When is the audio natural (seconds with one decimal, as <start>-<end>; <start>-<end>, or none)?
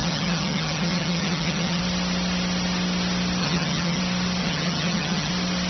1.8-3.4; 4.0-4.4; 5.3-5.7